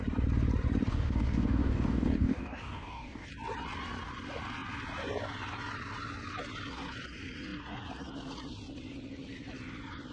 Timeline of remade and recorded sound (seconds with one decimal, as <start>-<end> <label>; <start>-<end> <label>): 0.0-0.9 recorded; 0.9-3.3 remade; 3.3-10.1 recorded